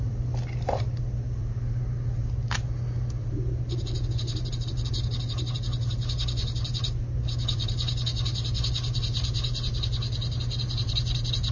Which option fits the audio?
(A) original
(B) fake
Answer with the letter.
A